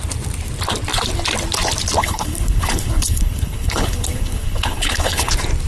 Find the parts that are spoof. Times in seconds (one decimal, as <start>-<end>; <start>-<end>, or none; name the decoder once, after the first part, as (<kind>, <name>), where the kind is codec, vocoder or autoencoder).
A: 2.0-5.3 (codec, HILCodec)